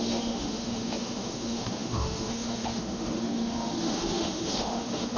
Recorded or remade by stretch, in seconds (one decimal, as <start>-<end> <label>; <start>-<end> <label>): 0.0-5.2 remade